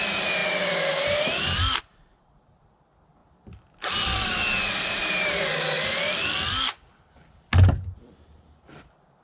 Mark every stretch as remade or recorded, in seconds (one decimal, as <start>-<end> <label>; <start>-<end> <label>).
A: 0.0-9.2 recorded